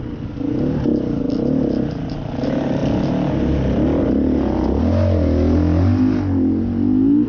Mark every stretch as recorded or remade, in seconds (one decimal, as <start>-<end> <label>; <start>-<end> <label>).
0.0-7.3 recorded